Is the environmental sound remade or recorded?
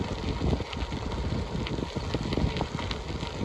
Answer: recorded